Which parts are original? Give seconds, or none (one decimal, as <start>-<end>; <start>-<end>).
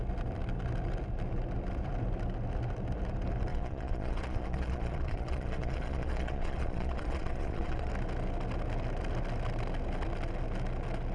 0.0-3.5; 7.9-11.1